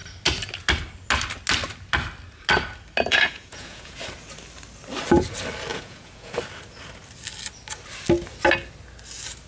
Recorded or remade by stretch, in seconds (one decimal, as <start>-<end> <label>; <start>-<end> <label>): 0.0-3.1 recorded; 3.1-4.0 remade; 4.0-5.7 recorded; 5.7-6.4 remade; 6.4-9.5 recorded